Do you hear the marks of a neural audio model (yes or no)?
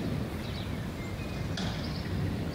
no